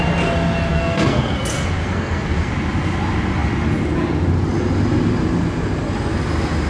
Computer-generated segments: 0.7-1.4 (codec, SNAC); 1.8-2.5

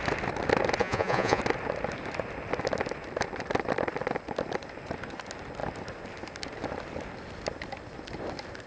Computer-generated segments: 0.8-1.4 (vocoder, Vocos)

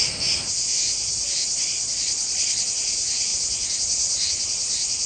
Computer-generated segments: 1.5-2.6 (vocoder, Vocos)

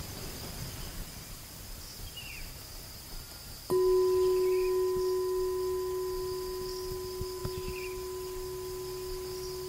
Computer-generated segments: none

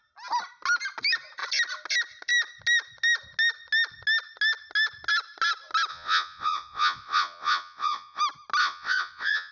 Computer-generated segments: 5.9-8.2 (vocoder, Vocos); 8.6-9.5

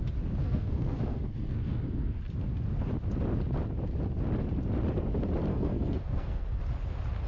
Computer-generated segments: 0.4-2.2 (codec, SNAC); 5.5-6.6